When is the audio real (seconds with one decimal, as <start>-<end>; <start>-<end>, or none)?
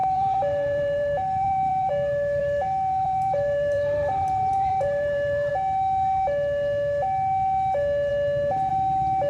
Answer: 1.9-2.4; 5.5-9.3